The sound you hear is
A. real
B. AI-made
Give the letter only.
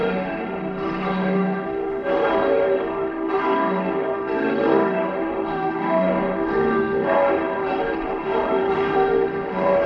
B